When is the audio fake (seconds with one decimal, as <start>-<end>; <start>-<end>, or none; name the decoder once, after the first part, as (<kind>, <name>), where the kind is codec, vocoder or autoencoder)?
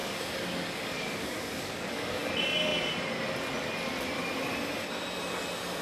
0.0-2.3 (codec, DAC)